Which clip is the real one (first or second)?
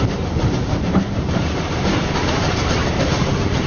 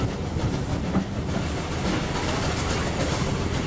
second